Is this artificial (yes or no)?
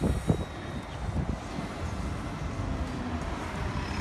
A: no